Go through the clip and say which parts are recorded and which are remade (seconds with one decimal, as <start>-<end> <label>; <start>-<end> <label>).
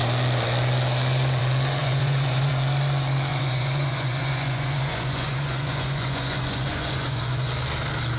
0.0-1.8 recorded; 1.8-2.5 remade; 2.5-3.3 recorded; 3.3-7.5 remade; 7.5-8.2 recorded